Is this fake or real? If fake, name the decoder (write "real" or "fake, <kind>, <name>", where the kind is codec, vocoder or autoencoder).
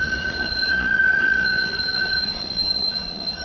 fake, vocoder, Vocos